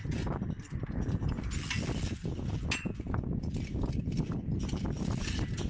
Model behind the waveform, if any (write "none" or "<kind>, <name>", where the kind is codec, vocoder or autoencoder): none